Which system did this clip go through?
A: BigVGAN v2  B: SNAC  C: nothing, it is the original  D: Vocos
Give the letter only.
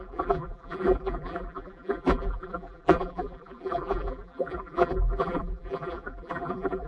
A